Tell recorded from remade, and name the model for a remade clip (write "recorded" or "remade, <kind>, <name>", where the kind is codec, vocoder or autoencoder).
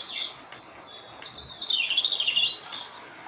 recorded